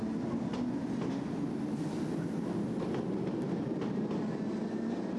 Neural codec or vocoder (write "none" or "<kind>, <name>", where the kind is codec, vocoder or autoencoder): none